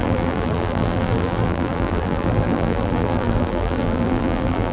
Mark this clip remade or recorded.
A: remade